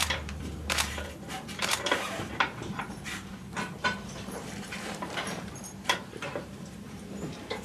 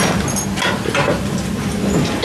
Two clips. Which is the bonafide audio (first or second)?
second